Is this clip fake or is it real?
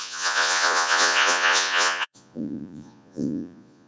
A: fake